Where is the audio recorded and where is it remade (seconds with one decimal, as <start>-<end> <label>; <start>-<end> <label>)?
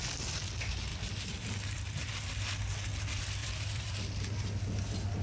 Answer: 0.0-0.9 recorded; 0.9-2.1 remade; 2.1-3.4 recorded; 3.4-3.9 remade; 3.9-5.2 recorded